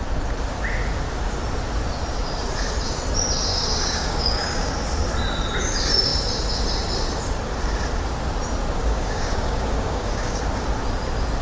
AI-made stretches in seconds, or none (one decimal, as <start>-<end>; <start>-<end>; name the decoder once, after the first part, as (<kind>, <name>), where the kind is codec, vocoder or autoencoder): 3.5-4.7 (codec, DAC); 8.8-10.4